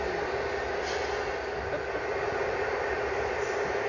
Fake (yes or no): no